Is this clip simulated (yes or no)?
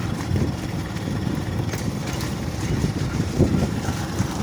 yes